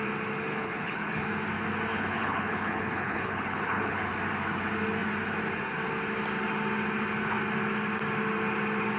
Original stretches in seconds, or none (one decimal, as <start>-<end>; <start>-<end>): 0.0-0.5; 1.2-1.9; 4.1-9.0